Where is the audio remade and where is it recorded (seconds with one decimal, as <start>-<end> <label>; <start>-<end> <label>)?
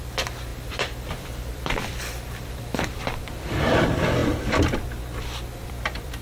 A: 0.0-4.2 remade; 4.2-5.6 recorded; 5.6-6.2 remade